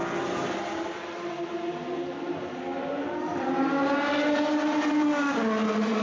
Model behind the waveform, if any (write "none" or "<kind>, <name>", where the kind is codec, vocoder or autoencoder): none